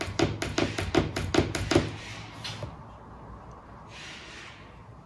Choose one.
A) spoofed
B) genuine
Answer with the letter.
B